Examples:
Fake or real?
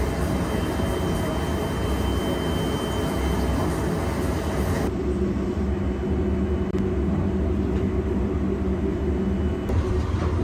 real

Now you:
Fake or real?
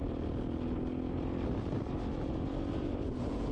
real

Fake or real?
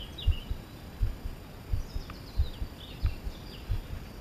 real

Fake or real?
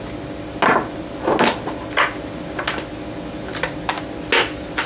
real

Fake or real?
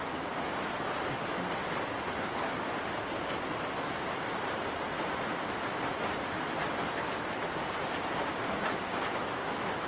real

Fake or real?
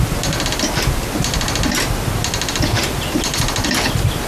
real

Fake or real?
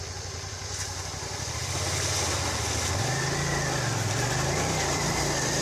real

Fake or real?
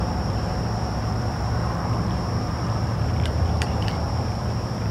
fake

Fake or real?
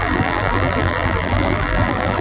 fake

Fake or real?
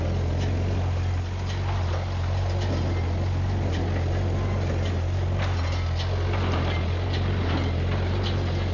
real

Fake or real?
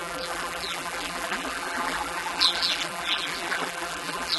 fake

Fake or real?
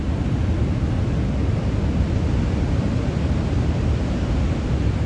real